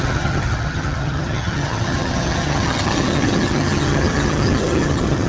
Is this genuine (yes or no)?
no